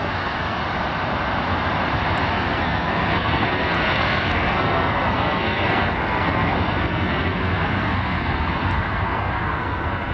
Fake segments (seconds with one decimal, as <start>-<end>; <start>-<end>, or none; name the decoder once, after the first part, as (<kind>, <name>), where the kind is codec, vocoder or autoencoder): 0.0-0.6 (codec, SNAC); 2.3-10.1